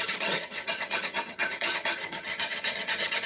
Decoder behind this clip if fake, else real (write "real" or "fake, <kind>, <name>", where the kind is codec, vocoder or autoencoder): fake, vocoder, HiFi-GAN